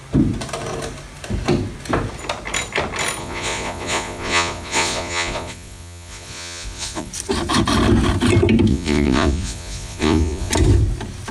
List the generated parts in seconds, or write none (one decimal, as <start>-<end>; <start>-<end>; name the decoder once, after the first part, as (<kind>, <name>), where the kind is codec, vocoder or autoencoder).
3.2-7.1 (vocoder, Vocos); 8.7-10.5